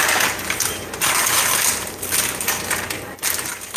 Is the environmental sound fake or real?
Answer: real